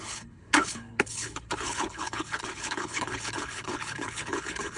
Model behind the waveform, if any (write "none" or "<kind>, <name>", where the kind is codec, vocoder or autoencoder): codec, HILCodec